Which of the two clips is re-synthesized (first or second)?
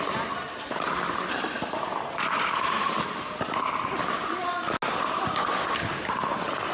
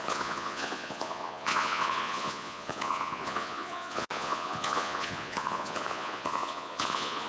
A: second